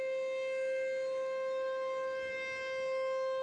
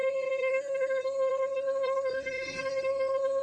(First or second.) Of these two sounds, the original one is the first